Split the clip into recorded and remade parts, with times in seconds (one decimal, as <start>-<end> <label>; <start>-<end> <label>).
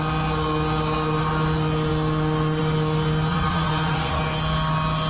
0.0-3.3 recorded; 3.3-4.2 remade; 4.2-5.1 recorded